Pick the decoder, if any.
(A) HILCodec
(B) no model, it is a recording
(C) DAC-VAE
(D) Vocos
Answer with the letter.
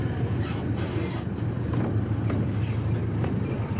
B